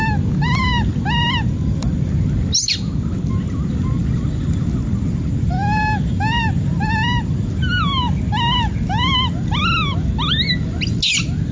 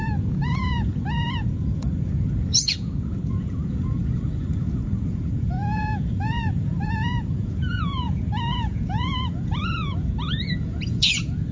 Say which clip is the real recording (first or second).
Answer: first